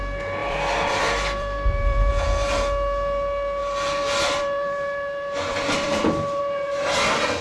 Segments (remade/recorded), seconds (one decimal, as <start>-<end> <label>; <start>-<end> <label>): 0.0-0.4 recorded; 0.4-2.1 remade; 2.1-3.6 recorded; 3.6-6.4 remade; 6.4-7.4 recorded